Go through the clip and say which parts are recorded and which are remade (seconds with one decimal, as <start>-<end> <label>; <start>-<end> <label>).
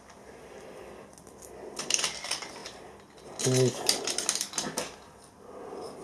0.0-6.0 recorded